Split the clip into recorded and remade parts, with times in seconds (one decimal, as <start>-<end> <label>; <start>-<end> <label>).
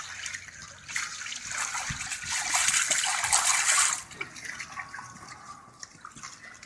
0.0-6.7 recorded